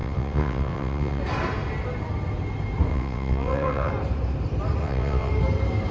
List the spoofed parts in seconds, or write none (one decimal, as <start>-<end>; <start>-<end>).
0.0-1.2; 2.9-3.9; 4.8-5.3